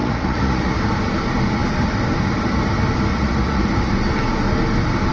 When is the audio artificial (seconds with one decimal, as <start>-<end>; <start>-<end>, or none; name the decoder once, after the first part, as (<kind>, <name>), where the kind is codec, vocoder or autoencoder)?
0.0-0.8 (vocoder, Vocos); 3.1-3.7